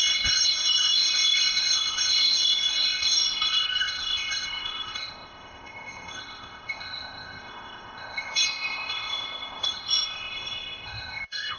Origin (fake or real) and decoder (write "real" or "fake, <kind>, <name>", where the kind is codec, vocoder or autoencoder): fake, codec, ZipCodec